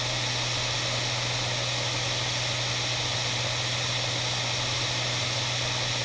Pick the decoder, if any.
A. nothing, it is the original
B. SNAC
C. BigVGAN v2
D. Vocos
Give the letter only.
A